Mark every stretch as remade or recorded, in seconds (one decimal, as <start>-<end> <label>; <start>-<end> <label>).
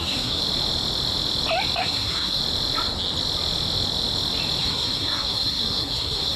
0.0-0.4 remade; 0.4-1.8 recorded; 1.8-2.4 remade; 2.4-4.6 recorded; 4.6-6.4 remade